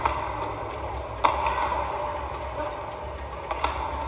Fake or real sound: real